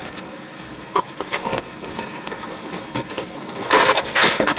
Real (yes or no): no